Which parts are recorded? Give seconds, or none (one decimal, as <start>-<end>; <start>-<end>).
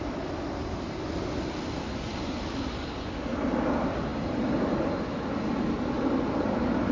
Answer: 0.0-6.9